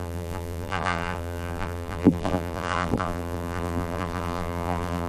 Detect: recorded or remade remade